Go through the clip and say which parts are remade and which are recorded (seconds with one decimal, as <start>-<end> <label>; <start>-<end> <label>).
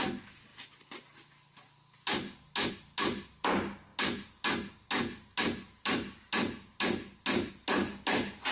0.0-8.5 recorded